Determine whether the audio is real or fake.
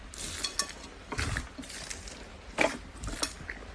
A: real